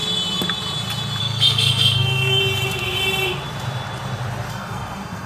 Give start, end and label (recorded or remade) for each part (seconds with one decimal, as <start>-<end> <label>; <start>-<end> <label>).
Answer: 0.0-1.2 recorded; 1.2-2.4 remade; 2.4-4.5 recorded; 4.5-5.3 remade